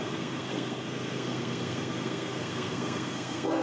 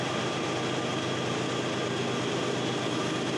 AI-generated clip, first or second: first